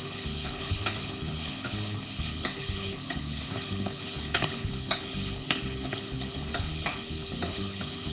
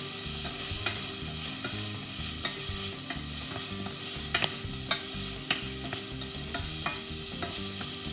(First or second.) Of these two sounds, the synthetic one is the first